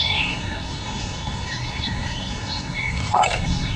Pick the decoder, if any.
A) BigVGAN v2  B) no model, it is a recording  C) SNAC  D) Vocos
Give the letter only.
C